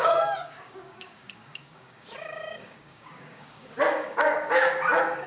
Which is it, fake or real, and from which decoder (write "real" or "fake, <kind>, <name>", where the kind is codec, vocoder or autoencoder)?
fake, codec, DAC